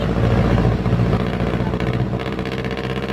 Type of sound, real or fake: real